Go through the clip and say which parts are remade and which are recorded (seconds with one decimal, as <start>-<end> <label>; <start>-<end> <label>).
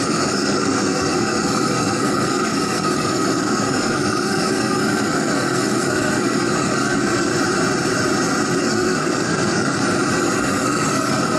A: 0.0-7.3 remade; 7.3-8.6 recorded; 8.6-9.8 remade; 9.8-10.4 recorded; 10.4-11.4 remade